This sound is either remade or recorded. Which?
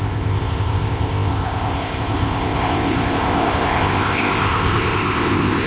remade